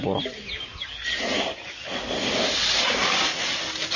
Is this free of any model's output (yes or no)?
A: yes